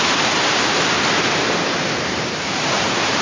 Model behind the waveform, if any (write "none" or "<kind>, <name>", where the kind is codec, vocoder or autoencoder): vocoder, BigVGAN v2